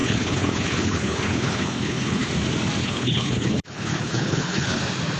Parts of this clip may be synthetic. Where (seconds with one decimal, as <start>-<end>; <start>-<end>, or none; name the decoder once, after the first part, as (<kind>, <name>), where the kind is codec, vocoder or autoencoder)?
0.0-2.3 (codec, HILCodec); 2.8-4.8